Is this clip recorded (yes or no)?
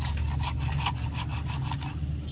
yes